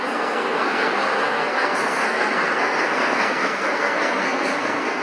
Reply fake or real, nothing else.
fake